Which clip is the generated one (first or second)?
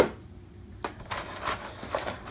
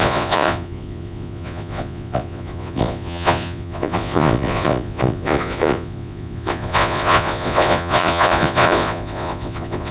second